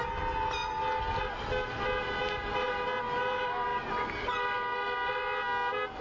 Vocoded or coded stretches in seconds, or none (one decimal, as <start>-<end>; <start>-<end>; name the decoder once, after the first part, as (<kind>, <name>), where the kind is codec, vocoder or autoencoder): none